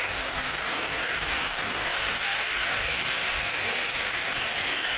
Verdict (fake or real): fake